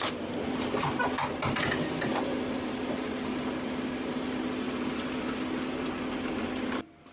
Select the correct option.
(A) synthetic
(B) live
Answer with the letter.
B